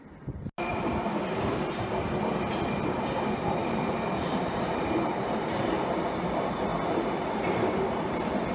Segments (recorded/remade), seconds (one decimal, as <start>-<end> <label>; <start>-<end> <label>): 0.0-3.6 recorded; 3.6-5.7 remade; 5.7-8.5 recorded